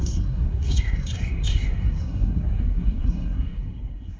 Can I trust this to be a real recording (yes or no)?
no